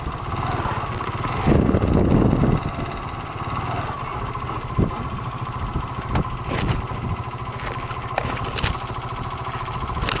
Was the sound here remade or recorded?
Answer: recorded